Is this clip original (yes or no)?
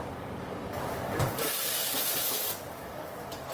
no